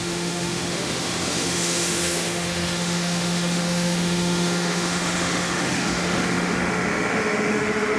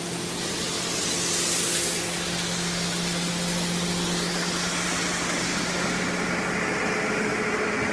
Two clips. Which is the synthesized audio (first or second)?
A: first